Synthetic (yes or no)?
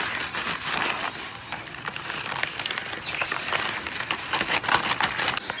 no